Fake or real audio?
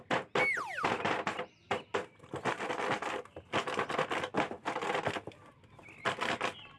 real